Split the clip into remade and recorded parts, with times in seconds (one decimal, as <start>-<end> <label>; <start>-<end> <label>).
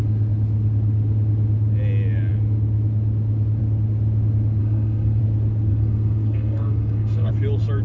0.0-4.6 recorded; 4.6-5.2 remade; 5.2-5.7 recorded; 5.7-7.3 remade; 7.3-7.8 recorded